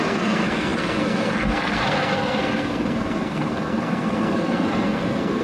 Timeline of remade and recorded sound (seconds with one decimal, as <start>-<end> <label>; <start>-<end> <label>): 0.0-5.4 remade